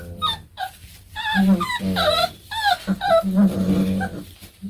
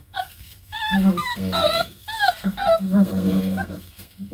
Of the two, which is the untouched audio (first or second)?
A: first